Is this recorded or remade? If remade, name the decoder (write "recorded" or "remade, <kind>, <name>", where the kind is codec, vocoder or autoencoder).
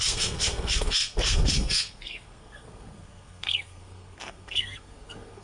remade, codec, SNAC